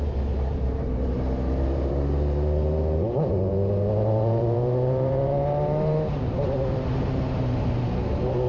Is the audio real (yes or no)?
no